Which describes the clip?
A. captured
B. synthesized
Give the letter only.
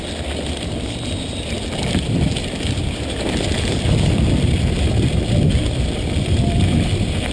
B